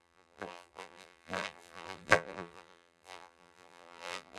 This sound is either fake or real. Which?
fake